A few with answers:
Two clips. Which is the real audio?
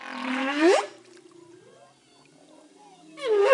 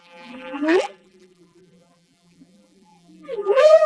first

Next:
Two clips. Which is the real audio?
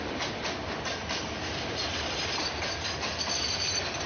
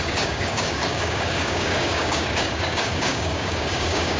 first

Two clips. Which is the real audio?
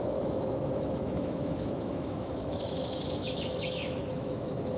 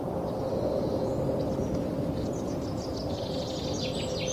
second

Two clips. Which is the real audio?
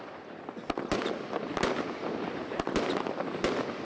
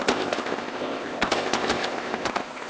first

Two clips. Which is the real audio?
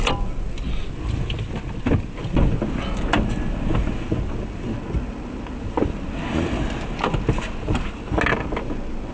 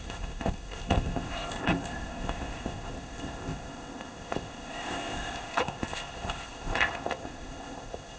first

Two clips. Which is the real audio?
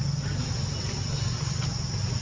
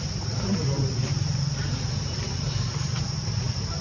first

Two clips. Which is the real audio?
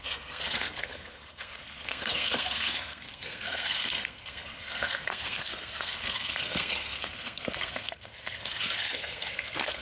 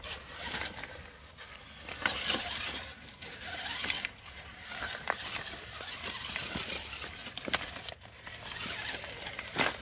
second